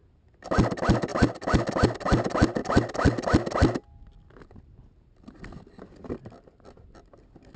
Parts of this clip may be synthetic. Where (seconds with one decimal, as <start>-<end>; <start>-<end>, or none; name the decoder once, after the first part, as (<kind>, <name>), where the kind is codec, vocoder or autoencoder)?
none